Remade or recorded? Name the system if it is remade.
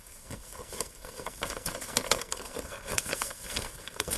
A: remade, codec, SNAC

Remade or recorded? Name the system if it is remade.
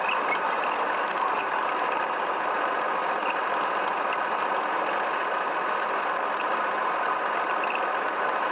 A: recorded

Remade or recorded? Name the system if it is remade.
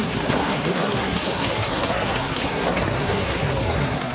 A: remade, codec, SNAC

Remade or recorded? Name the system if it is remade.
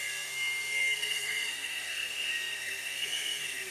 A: remade, codec, SNAC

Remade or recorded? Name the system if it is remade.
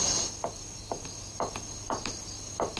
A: recorded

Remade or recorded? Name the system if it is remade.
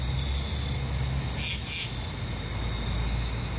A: recorded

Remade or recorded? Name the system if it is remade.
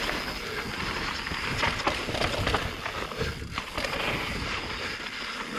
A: recorded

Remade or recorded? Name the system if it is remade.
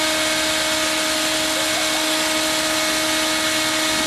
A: recorded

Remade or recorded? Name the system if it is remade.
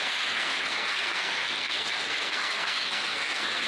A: remade, codec, SNAC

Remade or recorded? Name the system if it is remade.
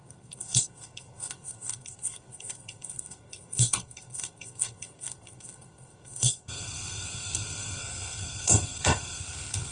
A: remade, codec, SNAC